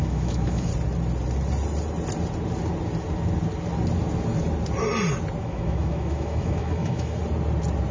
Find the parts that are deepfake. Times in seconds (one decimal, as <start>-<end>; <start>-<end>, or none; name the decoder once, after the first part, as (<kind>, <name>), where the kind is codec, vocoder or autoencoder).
0.0-0.7 (autoencoder, DAC-VAE); 5.4-7.2